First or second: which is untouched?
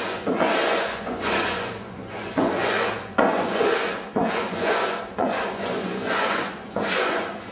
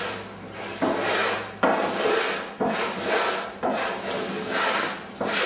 second